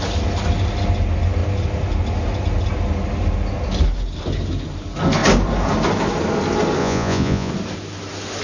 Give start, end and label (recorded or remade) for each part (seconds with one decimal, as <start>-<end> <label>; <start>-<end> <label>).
0.0-6.8 recorded; 6.8-7.5 remade; 7.5-8.4 recorded